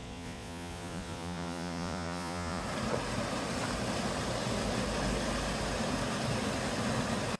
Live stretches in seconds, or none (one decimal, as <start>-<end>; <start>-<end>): 2.6-7.4